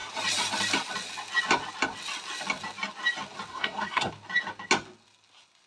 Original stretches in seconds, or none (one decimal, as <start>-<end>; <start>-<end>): 0.0-3.5; 4.1-5.7